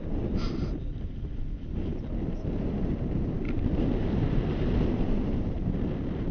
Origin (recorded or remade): recorded